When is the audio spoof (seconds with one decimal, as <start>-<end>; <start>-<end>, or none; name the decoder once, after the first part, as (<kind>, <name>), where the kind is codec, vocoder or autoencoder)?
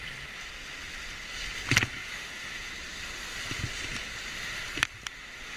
2.0-2.7 (vocoder, Vocos)